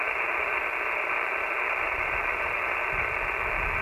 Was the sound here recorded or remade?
recorded